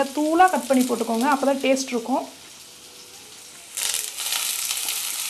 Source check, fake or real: real